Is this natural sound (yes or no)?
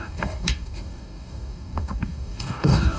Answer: no